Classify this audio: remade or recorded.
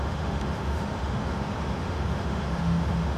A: remade